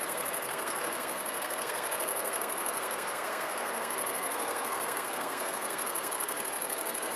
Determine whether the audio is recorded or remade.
remade